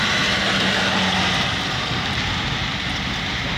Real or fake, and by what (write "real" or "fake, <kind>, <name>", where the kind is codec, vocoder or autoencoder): real